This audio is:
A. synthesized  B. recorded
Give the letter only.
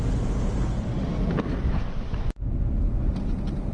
B